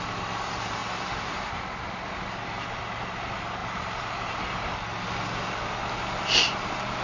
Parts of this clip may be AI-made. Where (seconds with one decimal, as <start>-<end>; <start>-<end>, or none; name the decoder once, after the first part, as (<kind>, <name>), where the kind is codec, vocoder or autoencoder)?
none